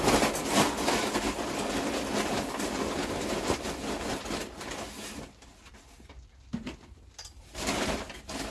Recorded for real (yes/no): yes